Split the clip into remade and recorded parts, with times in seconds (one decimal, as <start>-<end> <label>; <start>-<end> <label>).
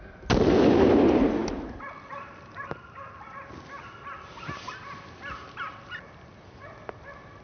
0.0-7.4 recorded